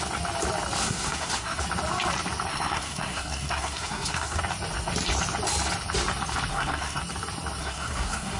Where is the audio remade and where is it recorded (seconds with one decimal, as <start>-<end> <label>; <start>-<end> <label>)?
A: 0.0-0.8 recorded; 0.8-1.6 remade; 1.6-2.5 recorded; 2.5-4.4 remade; 4.4-6.5 recorded; 6.5-7.0 remade; 7.0-7.6 recorded; 7.6-8.4 remade